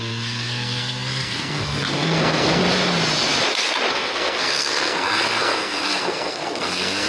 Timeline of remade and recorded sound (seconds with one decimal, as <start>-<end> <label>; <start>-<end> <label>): 0.0-2.6 remade; 2.6-3.9 recorded; 3.9-7.1 remade